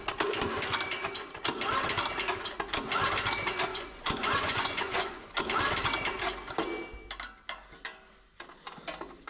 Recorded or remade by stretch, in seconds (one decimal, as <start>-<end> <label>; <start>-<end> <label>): 0.0-3.7 recorded; 3.7-5.4 remade; 5.4-9.3 recorded